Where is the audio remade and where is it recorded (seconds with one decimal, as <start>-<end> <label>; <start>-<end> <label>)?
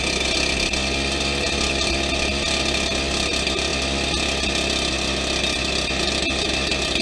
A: 0.0-7.0 recorded